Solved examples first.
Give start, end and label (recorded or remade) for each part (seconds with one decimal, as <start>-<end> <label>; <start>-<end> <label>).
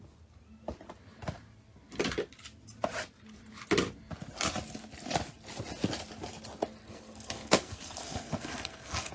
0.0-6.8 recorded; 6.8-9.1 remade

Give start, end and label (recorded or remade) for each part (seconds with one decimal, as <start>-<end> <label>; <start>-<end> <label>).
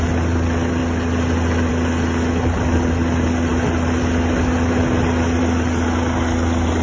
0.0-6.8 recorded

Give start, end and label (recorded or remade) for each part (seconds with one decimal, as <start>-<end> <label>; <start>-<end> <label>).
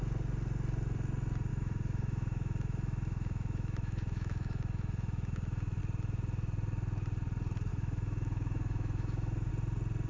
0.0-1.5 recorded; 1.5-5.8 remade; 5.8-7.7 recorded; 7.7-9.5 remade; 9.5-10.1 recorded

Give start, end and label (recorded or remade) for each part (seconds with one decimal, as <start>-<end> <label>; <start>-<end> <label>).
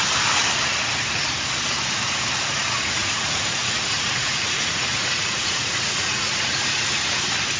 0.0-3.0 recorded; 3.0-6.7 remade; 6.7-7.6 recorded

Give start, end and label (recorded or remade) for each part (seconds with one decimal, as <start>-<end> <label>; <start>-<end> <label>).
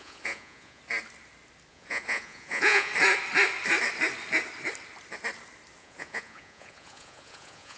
0.0-0.8 remade; 0.8-1.7 recorded; 1.7-2.9 remade; 2.9-5.8 recorded; 5.8-7.8 remade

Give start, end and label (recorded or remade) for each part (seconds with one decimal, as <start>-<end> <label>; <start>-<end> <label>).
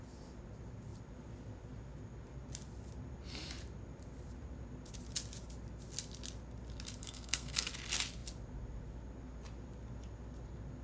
0.0-7.0 recorded; 7.0-7.7 remade; 7.7-10.8 recorded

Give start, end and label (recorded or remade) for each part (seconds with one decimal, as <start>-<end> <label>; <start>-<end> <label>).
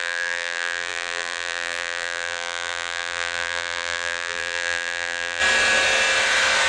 0.0-5.4 remade; 5.4-6.7 recorded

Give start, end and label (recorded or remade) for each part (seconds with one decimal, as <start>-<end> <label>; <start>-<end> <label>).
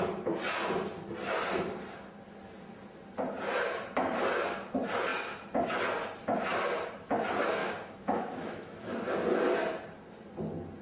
0.0-7.6 recorded; 7.6-8.9 remade; 8.9-10.8 recorded